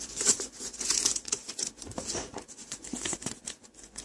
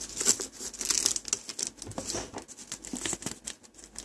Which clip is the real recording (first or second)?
second